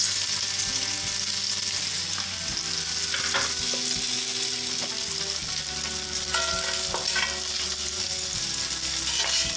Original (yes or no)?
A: yes